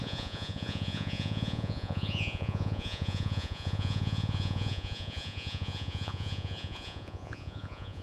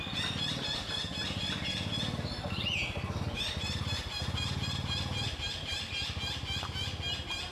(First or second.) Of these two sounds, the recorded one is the second